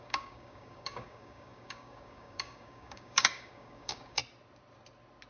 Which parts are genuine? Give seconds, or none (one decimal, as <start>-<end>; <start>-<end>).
4.2-5.3